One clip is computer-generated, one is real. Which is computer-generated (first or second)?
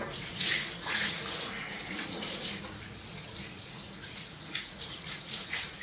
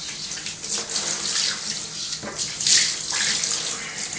first